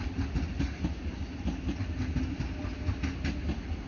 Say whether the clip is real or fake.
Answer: real